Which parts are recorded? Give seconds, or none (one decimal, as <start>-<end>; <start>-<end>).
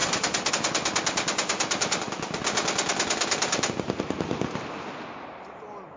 0.0-6.0